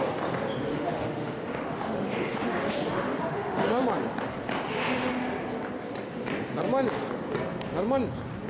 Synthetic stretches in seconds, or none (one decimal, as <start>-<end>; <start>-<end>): 0.7-3.8; 4.7-5.2

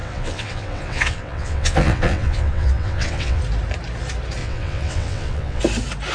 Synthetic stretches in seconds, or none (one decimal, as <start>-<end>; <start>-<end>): 0.0-3.4; 4.4-5.6

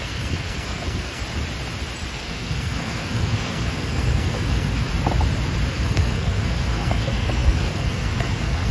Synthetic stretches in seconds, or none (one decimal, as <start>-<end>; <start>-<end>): 0.0-1.2; 2.1-4.9; 5.7-8.7

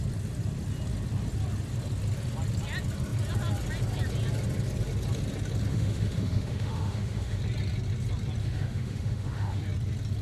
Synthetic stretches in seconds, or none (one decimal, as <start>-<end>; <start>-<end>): 5.7-7.4; 8.4-9.6

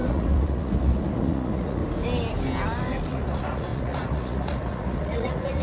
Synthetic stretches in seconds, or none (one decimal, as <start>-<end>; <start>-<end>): 0.0-1.8; 3.1-5.6

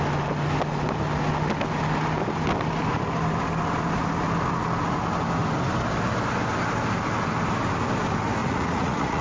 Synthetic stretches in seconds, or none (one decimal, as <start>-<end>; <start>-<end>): 8.4-9.2

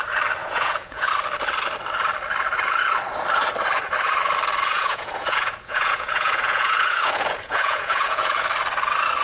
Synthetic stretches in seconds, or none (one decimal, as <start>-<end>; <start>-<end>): 0.4-1.1; 4.7-8.5